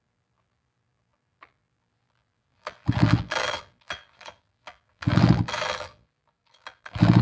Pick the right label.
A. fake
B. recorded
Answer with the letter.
A